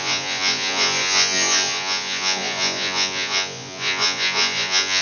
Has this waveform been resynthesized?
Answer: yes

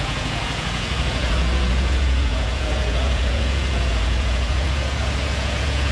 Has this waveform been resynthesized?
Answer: yes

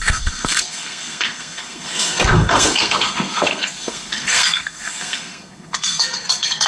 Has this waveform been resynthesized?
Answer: yes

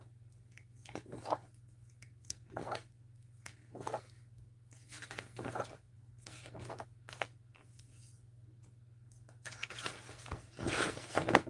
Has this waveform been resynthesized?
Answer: yes